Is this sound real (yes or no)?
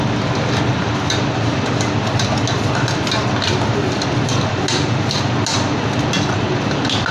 yes